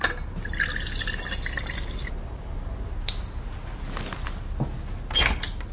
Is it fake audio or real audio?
real